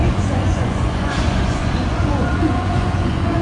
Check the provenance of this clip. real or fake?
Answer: fake